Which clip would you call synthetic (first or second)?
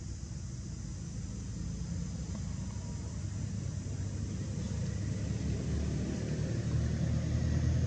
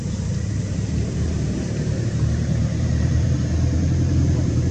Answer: second